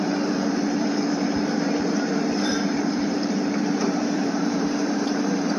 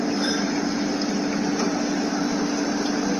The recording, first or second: second